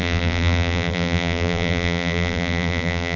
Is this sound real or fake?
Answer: fake